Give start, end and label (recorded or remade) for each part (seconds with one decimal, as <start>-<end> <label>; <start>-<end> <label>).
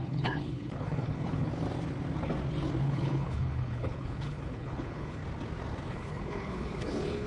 0.0-1.5 remade; 1.5-2.8 recorded; 2.8-5.2 remade; 5.2-5.9 recorded; 5.9-7.3 remade